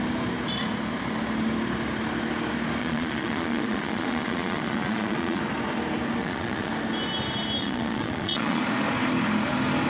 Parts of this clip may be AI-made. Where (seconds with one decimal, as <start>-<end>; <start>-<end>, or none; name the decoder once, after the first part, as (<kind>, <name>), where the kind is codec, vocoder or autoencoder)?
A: 2.8-5.4 (vocoder, Vocos); 6.2-6.7; 7.6-8.6